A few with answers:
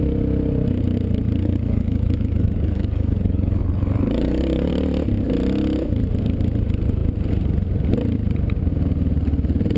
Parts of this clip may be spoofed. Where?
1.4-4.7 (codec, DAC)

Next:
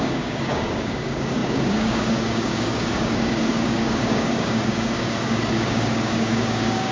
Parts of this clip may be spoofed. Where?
0.0-6.9 (codec, DAC)

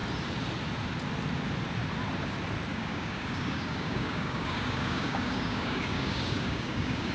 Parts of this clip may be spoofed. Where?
2.7-7.1 (codec, DAC)

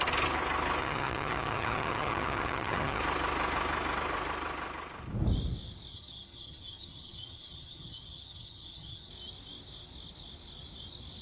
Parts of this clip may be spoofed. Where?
0.8-3.0 (vocoder, HiFi-GAN); 5.9-9.1

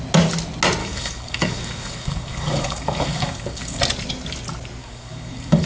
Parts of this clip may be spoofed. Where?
0.8-3.8 (codec, DAC); 4.8-5.7

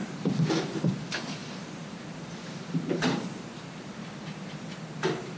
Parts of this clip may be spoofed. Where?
0.0-0.9 (vocoder, BigVGAN v2); 1.4-4.6